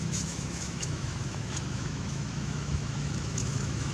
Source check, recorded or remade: remade